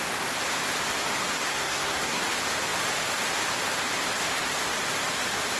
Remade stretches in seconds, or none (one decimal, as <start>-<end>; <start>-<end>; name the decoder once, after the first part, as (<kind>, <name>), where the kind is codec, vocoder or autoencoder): 1.4-2.2 (codec, SNAC)